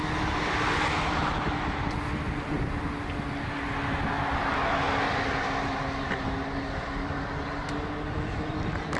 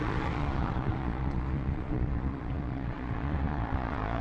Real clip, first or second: first